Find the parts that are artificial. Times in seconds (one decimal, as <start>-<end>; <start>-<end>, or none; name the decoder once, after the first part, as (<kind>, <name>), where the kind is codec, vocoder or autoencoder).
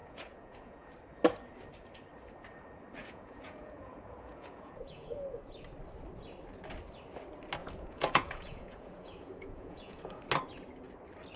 0.0-0.9 (vocoder, Vocos); 3.0-5.5; 7.6-10.2